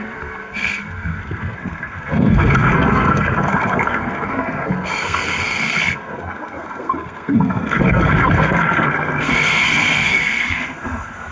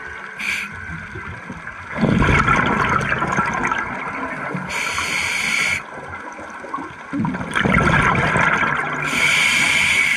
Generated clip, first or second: first